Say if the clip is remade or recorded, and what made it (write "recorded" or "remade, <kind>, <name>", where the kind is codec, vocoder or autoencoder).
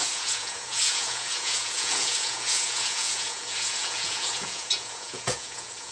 remade, vocoder, Vocos